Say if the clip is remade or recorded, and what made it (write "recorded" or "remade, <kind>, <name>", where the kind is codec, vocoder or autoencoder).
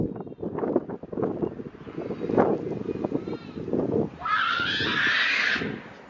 recorded